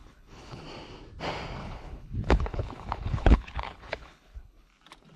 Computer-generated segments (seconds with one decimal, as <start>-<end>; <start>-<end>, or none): 0.0-0.6; 1.6-4.7